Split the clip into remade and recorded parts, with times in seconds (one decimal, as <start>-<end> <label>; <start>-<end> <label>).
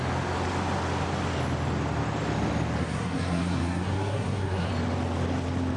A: 0.0-2.8 recorded; 2.8-4.7 remade; 4.7-5.8 recorded